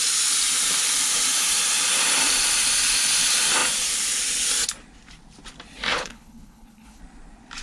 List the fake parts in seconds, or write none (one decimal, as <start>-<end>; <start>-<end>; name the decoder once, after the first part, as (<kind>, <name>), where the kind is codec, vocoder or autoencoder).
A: 5.9-7.0 (codec, HILCodec)